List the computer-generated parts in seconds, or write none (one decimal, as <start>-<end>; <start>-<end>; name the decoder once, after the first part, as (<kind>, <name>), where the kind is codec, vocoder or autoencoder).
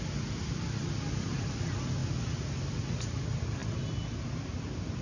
none